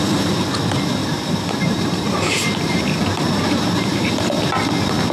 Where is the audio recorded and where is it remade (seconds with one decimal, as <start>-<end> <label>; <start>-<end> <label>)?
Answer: 0.0-1.0 recorded; 1.0-4.1 remade; 4.1-5.1 recorded